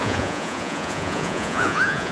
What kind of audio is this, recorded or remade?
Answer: remade